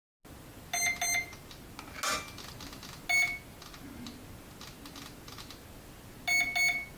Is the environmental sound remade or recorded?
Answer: recorded